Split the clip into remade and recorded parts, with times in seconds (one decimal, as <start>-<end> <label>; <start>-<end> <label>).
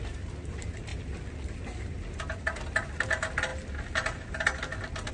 0.0-5.1 recorded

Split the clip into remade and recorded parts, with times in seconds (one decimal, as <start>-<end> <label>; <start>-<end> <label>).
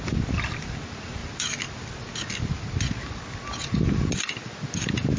0.0-5.2 recorded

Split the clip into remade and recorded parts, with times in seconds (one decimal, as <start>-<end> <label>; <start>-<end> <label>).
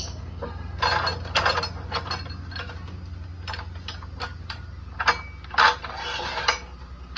0.0-7.2 recorded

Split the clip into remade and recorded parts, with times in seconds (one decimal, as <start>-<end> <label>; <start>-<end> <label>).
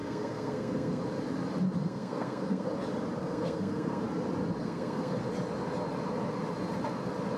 0.0-1.0 remade; 1.0-1.8 recorded; 1.8-2.7 remade; 2.7-3.2 recorded; 3.2-4.0 remade; 4.0-4.6 recorded; 4.6-5.2 remade; 5.2-7.4 recorded